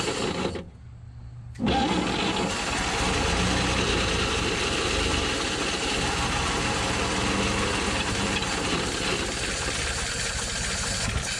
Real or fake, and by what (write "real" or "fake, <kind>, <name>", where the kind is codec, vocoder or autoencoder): real